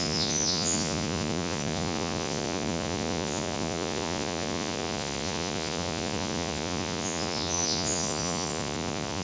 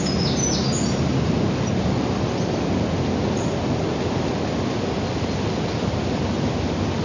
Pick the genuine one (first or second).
second